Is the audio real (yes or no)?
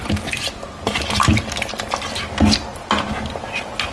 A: yes